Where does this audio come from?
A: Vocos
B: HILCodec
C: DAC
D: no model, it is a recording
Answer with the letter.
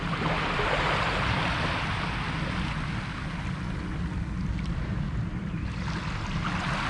D